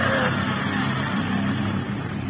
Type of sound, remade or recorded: remade